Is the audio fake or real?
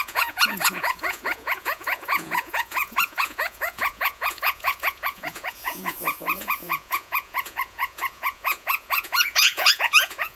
fake